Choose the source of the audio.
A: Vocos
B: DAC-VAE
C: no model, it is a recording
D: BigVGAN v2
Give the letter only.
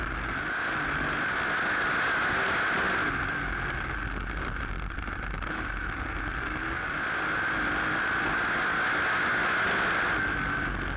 C